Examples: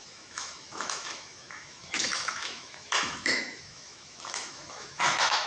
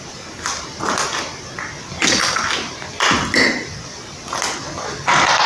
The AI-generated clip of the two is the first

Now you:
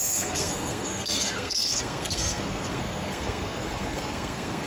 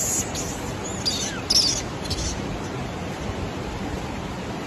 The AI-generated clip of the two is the first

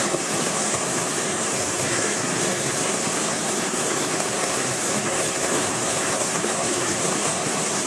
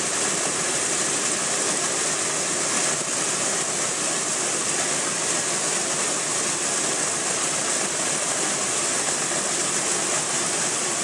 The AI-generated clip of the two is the first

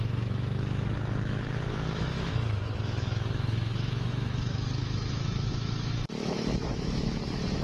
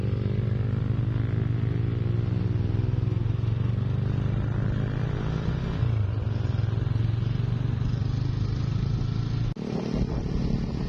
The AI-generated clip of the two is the first